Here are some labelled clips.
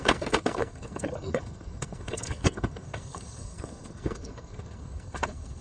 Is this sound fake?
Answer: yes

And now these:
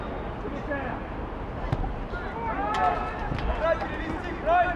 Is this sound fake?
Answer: no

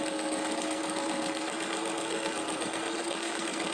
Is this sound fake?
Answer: yes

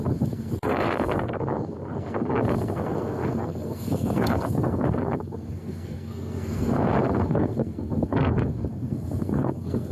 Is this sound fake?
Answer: yes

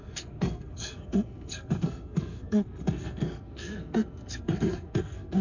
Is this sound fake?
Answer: yes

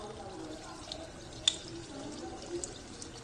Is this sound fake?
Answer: no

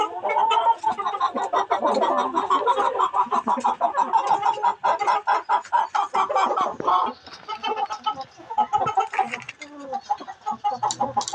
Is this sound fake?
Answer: no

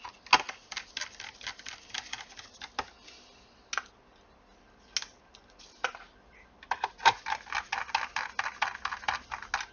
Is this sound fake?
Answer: no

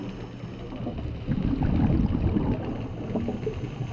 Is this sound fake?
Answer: no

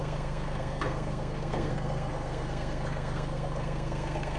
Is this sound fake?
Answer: yes